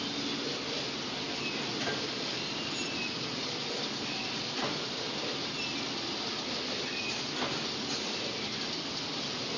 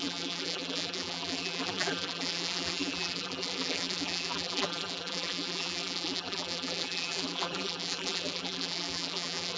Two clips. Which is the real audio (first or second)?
first